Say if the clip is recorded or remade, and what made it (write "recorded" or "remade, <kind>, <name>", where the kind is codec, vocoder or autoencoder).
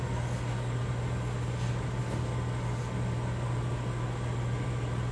recorded